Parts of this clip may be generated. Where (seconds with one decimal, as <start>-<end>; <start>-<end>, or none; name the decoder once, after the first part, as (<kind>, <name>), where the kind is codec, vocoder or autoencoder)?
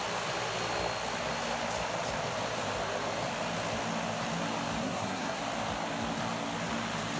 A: 4.8-5.4 (codec, SNAC)